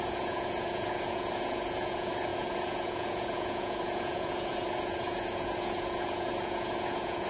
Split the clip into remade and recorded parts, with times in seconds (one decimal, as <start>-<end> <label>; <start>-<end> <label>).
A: 0.0-7.3 remade